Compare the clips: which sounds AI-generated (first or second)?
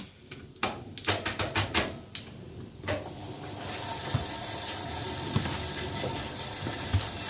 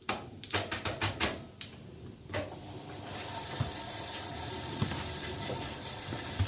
second